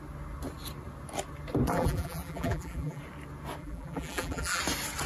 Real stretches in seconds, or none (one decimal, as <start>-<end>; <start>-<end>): 0.0-1.7; 3.0-3.6; 4.6-5.1